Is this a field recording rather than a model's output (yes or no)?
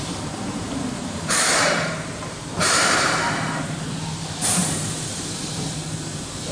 no